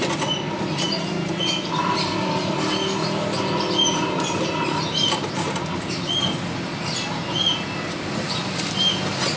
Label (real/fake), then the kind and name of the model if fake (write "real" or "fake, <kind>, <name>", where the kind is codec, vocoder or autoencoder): real